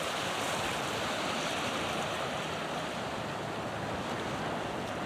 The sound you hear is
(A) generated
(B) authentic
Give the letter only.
B